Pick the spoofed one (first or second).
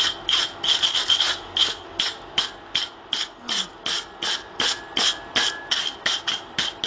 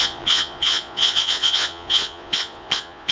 second